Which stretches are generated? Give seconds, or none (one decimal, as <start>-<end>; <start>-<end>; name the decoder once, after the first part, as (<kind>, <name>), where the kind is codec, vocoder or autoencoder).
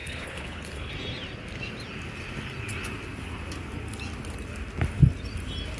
0.0-0.9 (codec, HILCodec)